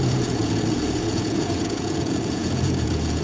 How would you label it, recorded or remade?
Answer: remade